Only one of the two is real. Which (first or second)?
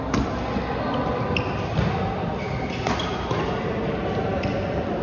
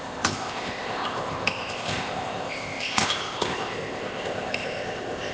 first